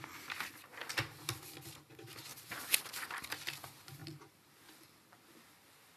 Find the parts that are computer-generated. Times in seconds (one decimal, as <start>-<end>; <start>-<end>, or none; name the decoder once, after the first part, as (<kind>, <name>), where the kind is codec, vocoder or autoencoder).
none